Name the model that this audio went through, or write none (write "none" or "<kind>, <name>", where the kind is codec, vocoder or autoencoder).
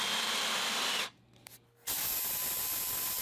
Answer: none